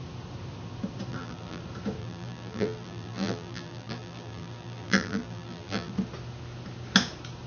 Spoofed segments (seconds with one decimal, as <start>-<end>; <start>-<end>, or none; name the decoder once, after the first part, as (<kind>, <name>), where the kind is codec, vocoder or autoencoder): 1.1-1.6 (vocoder, BigVGAN v2); 2.0-5.9